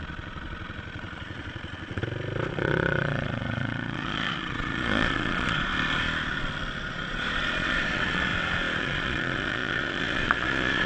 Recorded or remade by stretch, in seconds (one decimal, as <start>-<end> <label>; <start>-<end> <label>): 0.0-2.0 remade; 2.0-2.5 recorded; 2.5-5.7 remade; 5.7-6.8 recorded; 6.8-8.3 remade; 8.3-8.8 recorded; 8.8-10.9 remade